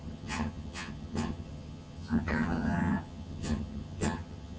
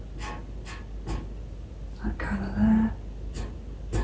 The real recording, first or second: second